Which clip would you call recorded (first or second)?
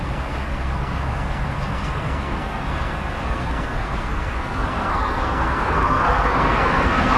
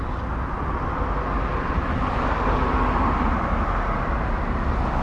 second